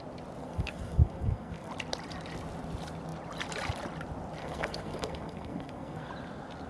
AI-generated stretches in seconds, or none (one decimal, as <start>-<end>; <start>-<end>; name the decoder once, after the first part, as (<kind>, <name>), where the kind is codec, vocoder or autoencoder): 0.4-1.7 (codec, SNAC); 4.4-6.1